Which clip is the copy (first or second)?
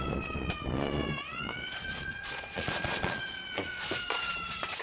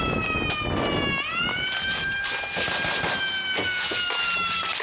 first